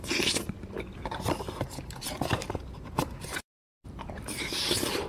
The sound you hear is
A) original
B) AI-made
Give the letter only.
B